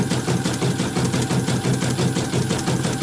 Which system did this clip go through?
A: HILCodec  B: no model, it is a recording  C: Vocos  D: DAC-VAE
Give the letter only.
B